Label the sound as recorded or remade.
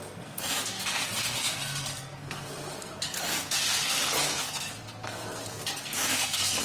remade